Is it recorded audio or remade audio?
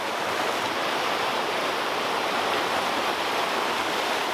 recorded